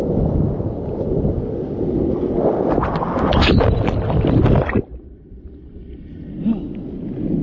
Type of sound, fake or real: real